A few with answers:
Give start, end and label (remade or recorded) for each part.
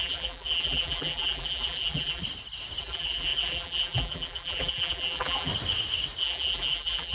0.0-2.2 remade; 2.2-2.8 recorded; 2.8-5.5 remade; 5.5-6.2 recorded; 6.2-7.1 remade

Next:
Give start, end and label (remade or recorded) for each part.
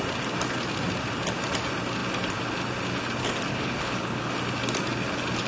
0.0-3.5 recorded; 3.5-4.3 remade; 4.3-5.5 recorded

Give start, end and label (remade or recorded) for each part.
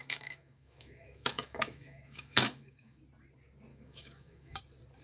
0.0-3.0 remade; 3.0-3.7 recorded; 3.7-4.6 remade; 4.6-5.0 recorded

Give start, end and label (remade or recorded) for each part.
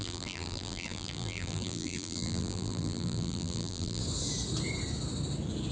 0.0-4.0 remade; 4.0-5.7 recorded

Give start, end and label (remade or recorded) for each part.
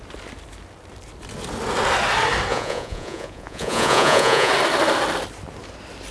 0.0-2.5 recorded; 2.5-4.5 remade; 4.5-6.1 recorded